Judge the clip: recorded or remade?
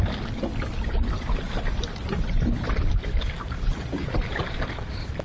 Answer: remade